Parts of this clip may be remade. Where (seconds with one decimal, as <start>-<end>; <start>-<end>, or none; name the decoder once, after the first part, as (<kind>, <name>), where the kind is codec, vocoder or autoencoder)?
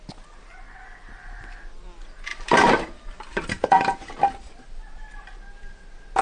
2.3-4.8 (vocoder, BigVGAN v2)